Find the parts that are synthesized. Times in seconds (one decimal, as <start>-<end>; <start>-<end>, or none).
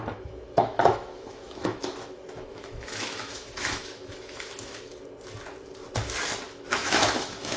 0.0-4.9; 6.5-7.6